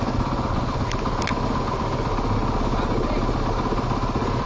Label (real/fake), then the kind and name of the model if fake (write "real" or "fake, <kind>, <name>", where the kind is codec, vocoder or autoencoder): real